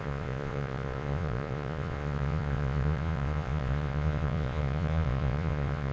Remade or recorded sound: remade